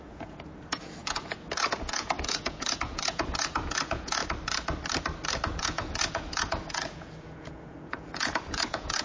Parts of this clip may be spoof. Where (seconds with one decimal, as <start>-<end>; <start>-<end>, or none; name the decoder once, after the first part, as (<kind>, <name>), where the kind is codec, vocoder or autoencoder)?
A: 0.0-4.2 (vocoder, Vocos); 5.6-9.0